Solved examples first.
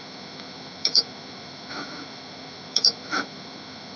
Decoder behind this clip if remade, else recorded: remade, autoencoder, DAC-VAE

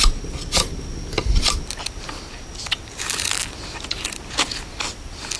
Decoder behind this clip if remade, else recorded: recorded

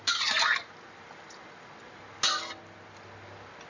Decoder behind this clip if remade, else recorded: recorded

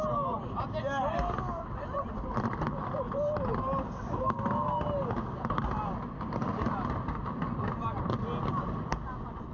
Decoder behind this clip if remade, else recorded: recorded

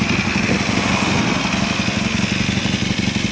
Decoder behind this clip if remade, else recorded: recorded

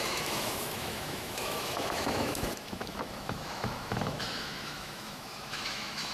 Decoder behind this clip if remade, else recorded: remade, autoencoder, DAC-VAE